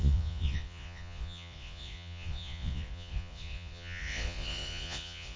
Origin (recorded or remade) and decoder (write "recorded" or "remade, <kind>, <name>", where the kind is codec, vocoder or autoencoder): remade, vocoder, Vocos